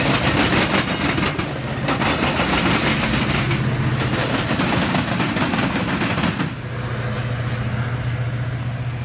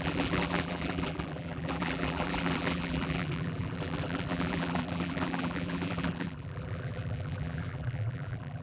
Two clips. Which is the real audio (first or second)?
first